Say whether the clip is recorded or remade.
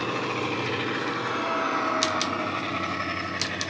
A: recorded